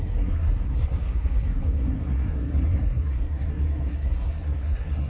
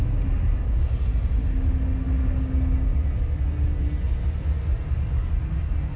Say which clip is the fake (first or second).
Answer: first